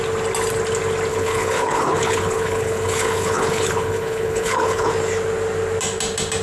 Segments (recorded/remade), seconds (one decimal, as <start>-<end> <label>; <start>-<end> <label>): 0.0-1.1 recorded; 1.1-4.9 remade; 4.9-6.4 recorded